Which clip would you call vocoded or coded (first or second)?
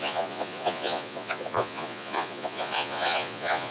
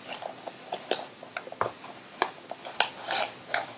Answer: first